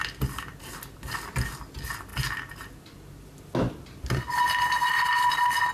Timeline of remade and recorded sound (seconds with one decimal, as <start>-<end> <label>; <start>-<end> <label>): 0.0-5.7 recorded